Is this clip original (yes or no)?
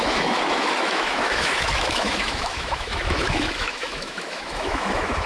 no